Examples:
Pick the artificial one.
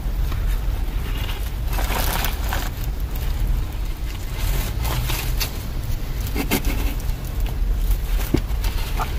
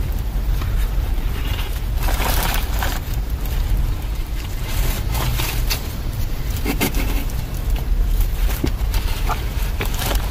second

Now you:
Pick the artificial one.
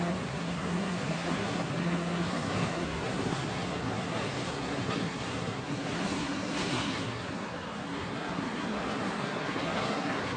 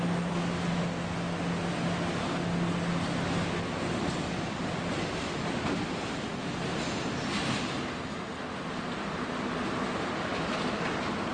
first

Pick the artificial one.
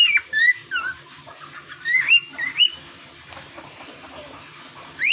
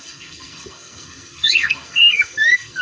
second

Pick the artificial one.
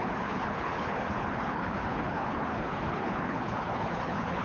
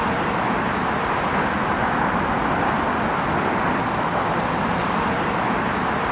first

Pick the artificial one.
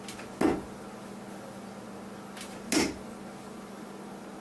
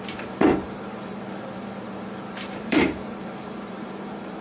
second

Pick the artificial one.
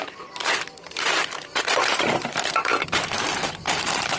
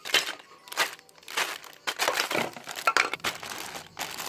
first